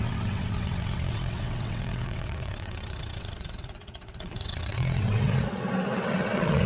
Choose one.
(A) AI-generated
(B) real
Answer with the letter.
A